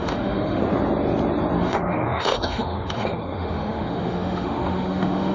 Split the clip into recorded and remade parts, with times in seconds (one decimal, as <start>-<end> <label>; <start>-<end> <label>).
0.0-0.6 remade; 0.6-1.6 recorded; 1.6-5.3 remade